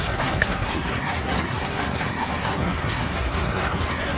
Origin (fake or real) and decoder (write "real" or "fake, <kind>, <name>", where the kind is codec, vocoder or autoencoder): fake, codec, SNAC